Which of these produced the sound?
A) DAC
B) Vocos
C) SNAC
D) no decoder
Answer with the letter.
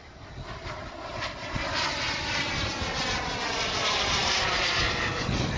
D